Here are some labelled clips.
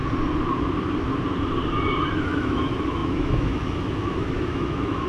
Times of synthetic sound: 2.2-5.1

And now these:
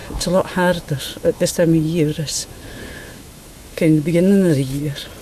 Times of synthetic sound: 0.0-1.5; 2.1-4.8

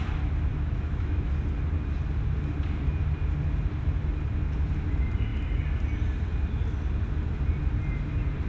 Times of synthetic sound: 0.5-1.3

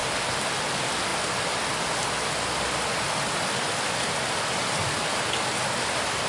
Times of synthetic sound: none

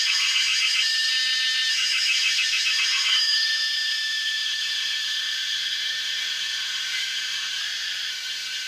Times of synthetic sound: 0.0-1.1; 1.7-7.6; 8.1-8.7

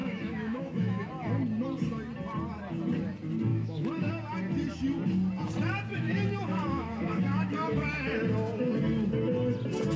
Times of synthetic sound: 0.0-1.1; 3.5-4.1; 5.9-8.1